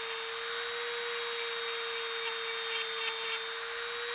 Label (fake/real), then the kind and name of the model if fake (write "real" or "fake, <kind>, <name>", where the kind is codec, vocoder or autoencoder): real